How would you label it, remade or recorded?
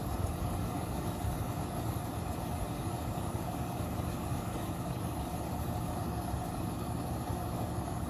remade